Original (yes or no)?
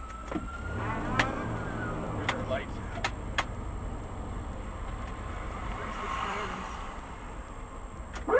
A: no